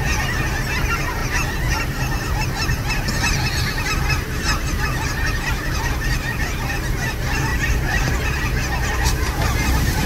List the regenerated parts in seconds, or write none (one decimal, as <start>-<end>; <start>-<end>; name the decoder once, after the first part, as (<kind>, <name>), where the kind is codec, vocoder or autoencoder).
7.5-8.2 (vocoder, BigVGAN v2)